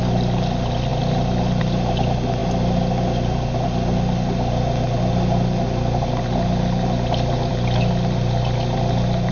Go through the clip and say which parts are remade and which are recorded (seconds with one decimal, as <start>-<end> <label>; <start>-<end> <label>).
0.0-9.3 recorded